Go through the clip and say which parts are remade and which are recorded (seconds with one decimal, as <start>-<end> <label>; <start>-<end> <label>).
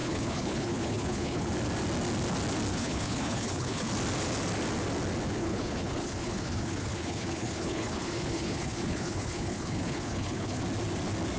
0.0-1.5 remade; 1.5-2.7 recorded; 2.7-3.9 remade; 3.9-5.4 recorded; 5.4-10.6 remade; 10.6-11.4 recorded